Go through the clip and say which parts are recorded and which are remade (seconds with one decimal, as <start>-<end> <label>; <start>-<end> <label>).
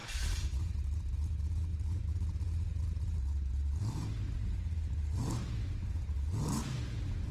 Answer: 0.0-7.3 recorded